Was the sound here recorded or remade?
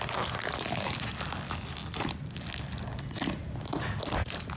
recorded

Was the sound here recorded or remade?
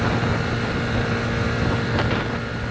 recorded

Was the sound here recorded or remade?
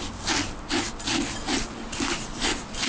recorded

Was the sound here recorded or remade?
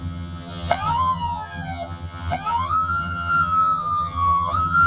remade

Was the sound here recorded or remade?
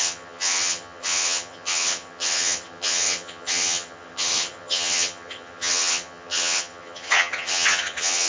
remade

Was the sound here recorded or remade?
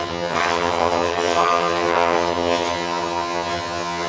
remade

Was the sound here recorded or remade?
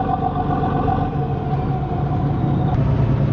recorded